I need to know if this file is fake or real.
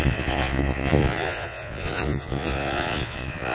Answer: fake